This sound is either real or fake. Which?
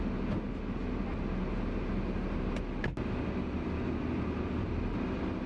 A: real